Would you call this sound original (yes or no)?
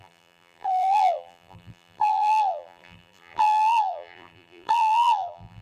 no